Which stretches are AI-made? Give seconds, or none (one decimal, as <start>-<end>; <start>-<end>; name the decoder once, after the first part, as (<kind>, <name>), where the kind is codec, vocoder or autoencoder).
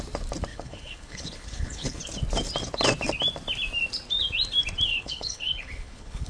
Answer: 0.5-2.0 (codec, HILCodec); 4.9-6.3